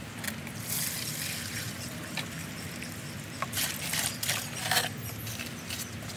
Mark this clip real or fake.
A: real